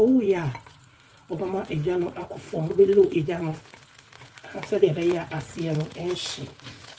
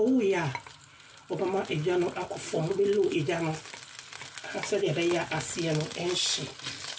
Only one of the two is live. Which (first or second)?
second